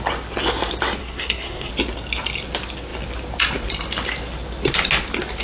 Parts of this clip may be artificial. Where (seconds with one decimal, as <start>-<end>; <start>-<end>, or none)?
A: 1.0-1.7